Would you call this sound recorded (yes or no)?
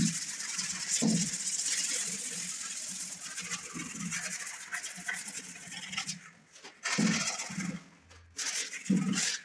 yes